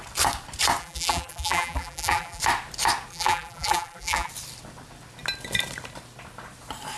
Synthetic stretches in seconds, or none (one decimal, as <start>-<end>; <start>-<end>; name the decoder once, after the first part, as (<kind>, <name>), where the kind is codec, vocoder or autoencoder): 0.8-2.4 (vocoder, BigVGAN v2); 3.1-4.3